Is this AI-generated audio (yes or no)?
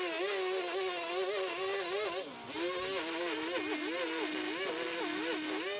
no